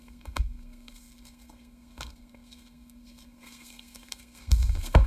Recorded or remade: remade